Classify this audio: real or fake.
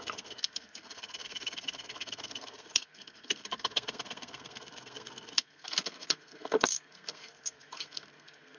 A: fake